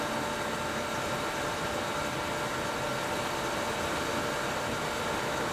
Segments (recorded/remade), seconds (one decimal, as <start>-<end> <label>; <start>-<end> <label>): 0.0-5.5 recorded